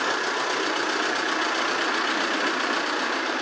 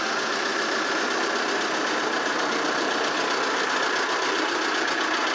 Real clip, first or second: second